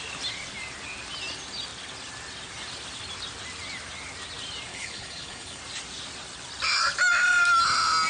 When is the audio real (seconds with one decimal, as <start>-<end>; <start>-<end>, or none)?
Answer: 0.0-4.7; 5.6-8.1